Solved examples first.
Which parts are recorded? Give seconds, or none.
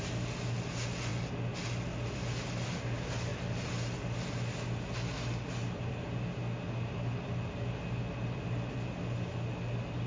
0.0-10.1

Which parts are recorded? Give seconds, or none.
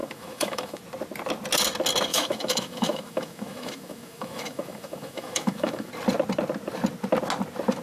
0.8-2.1; 5.9-7.8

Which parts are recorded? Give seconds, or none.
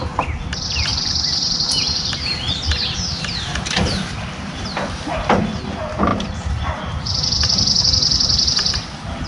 0.0-0.9; 2.2-3.5; 5.4-6.1; 7.0-9.3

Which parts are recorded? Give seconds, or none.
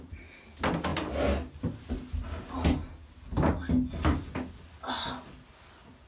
0.0-6.1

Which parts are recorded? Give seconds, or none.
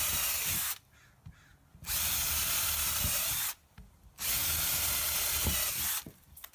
0.0-4.4; 5.4-6.5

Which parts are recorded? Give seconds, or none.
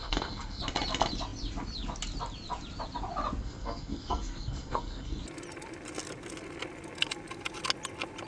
0.6-3.4; 5.2-8.3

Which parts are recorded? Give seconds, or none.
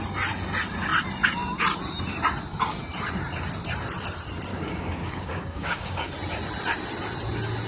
0.0-4.5; 6.1-7.7